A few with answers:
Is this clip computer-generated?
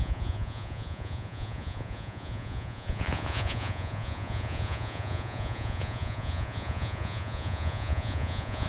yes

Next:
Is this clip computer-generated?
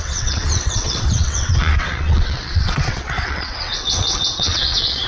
yes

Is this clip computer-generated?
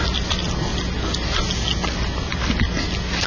no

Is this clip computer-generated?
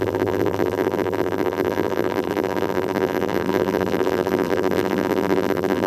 yes